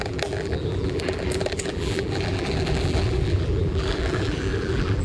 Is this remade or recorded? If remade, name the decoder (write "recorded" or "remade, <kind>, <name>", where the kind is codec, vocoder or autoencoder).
remade, vocoder, BigVGAN v2